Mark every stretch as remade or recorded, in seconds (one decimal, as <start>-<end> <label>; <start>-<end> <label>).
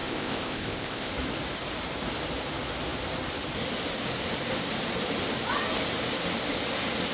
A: 0.0-1.1 remade; 1.1-7.1 recorded